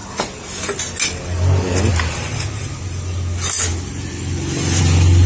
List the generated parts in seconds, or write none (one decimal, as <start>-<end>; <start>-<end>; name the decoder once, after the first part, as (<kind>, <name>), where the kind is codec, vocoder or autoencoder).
none